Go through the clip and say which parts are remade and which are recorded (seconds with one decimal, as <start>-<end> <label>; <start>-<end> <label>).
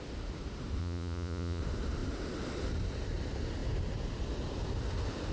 0.0-0.8 recorded; 0.8-1.6 remade; 1.6-5.3 recorded